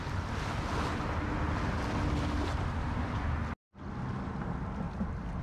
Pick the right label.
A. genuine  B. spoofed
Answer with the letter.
A